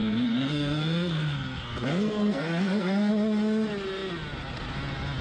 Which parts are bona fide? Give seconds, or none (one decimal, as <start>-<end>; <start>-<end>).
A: 3.1-5.2

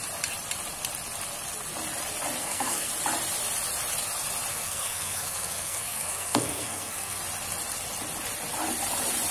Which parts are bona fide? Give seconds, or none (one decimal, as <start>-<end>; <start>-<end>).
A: 0.0-2.4; 2.9-4.5; 7.2-9.3

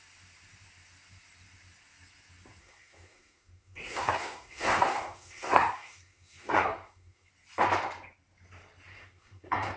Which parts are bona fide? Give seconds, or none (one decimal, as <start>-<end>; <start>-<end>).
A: 0.0-2.6; 7.3-8.9

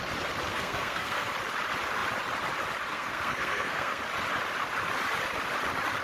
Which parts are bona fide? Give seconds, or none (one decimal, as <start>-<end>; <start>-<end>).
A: 0.0-0.5; 1.3-2.9; 4.0-6.0

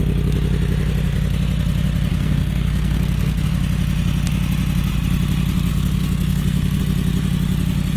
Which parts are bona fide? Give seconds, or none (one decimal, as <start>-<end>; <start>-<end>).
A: 0.0-2.1; 3.5-5.7; 6.8-8.0

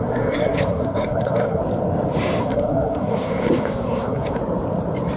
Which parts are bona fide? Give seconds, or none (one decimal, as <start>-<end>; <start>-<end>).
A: 1.6-2.4; 4.4-5.2

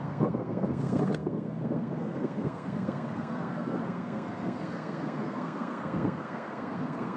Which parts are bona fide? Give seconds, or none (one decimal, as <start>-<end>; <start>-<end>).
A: none